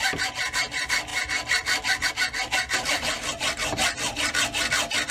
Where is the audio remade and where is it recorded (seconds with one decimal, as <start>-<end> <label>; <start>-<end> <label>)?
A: 0.0-5.1 recorded